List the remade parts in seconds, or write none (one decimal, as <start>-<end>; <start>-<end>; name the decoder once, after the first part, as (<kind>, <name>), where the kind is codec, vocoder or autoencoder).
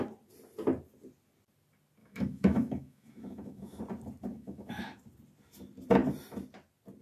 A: 2.0-3.8 (autoencoder, DAC-VAE); 4.3-5.0